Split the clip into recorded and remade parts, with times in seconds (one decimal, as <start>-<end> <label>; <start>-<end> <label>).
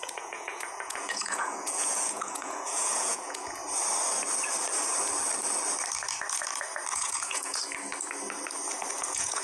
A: 0.0-3.6 remade; 3.6-6.9 recorded; 6.9-7.6 remade; 7.6-9.0 recorded; 9.0-9.4 remade